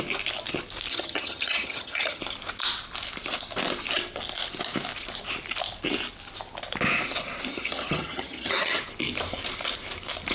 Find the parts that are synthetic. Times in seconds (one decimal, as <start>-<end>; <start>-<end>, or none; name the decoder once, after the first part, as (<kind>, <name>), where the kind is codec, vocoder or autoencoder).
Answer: 0.9-2.2 (vocoder, HiFi-GAN); 7.5-8.8